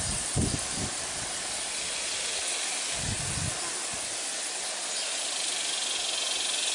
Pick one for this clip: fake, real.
real